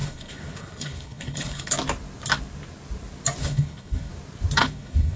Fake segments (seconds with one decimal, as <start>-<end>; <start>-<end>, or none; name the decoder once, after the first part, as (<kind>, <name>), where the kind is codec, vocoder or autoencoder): 0.0-1.7 (codec, HILCodec); 3.4-4.1; 4.6-5.2